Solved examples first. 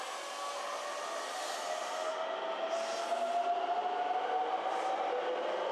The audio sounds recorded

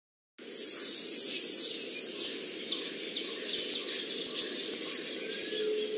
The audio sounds recorded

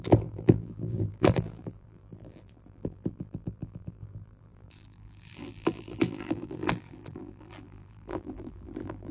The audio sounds remade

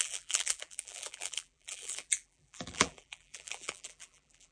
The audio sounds remade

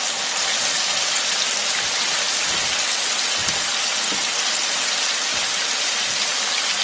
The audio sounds recorded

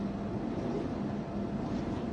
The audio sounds recorded